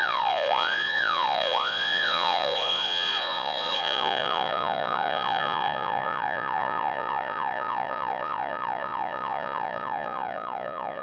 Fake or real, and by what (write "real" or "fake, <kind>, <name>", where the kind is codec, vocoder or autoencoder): fake, vocoder, Vocos